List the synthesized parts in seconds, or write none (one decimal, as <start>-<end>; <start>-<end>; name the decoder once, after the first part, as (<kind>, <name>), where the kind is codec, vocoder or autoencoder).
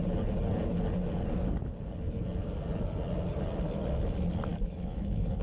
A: 4.5-5.4 (autoencoder, DAC-VAE)